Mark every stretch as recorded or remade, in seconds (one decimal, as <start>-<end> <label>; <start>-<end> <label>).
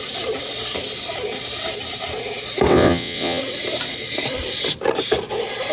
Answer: 0.0-2.7 recorded; 2.7-3.4 remade; 3.4-5.7 recorded